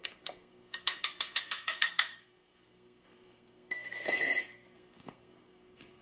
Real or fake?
fake